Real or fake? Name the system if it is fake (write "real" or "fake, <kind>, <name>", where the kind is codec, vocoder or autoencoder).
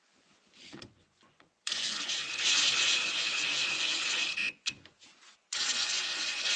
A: fake, vocoder, Vocos